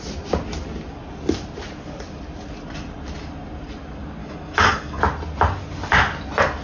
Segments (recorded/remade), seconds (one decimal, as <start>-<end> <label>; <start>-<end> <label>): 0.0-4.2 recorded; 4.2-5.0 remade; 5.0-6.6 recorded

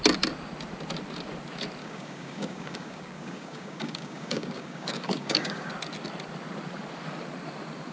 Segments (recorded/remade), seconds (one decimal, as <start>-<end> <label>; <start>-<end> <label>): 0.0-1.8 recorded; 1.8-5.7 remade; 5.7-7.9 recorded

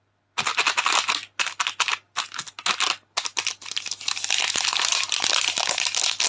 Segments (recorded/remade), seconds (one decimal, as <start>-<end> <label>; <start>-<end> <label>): 0.0-6.3 recorded

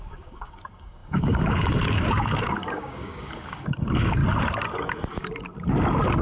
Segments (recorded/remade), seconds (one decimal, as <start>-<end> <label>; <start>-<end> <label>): 0.0-4.2 remade; 4.2-6.2 recorded

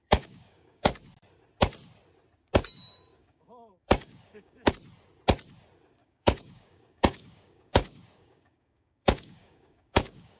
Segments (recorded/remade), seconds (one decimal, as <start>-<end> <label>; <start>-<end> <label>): 0.0-0.9 remade; 0.9-3.1 recorded; 3.1-4.7 remade; 4.7-6.0 recorded; 6.0-10.4 remade